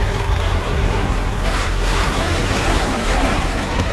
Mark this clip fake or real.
fake